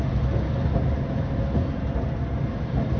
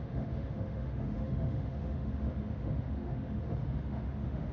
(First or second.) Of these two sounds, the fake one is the second